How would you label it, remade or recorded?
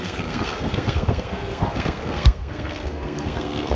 remade